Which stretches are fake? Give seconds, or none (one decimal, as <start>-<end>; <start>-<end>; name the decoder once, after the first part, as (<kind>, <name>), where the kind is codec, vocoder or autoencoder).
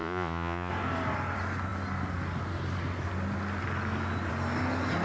0.0-0.7 (vocoder, Vocos)